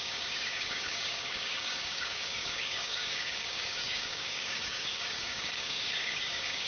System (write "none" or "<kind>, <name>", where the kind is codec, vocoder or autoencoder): codec, DAC